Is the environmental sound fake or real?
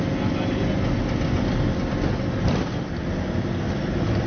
real